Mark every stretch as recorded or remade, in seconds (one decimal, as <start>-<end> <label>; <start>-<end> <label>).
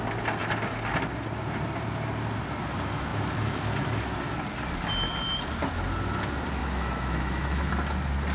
0.0-6.6 recorded; 6.6-7.7 remade; 7.7-8.3 recorded